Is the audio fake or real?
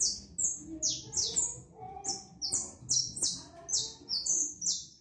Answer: real